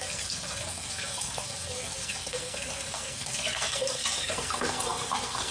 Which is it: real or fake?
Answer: fake